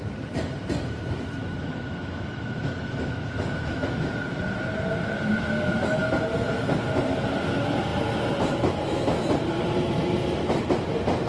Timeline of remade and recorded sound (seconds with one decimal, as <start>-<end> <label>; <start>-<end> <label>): 0.0-1.4 recorded; 1.4-4.1 remade; 4.1-5.3 recorded; 5.3-6.0 remade; 6.0-11.3 recorded